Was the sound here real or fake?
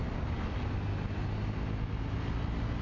real